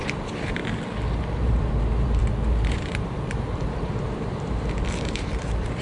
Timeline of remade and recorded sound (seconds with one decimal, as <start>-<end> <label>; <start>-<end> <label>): 0.0-0.6 remade; 0.6-1.4 recorded; 1.4-5.8 remade